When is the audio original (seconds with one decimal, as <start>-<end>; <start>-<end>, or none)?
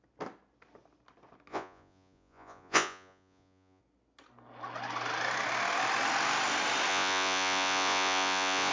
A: 0.0-1.5; 3.8-6.9